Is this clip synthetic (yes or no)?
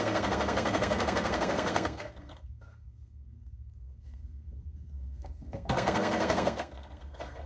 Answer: yes